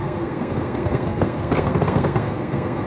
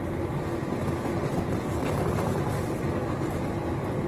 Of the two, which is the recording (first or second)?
second